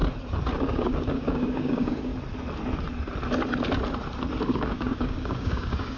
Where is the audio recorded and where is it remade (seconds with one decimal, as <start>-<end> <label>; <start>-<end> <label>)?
0.0-0.6 recorded; 0.6-2.1 remade; 2.1-4.5 recorded; 4.5-6.0 remade